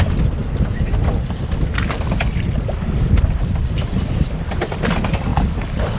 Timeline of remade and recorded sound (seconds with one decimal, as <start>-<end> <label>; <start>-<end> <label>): 0.0-6.0 recorded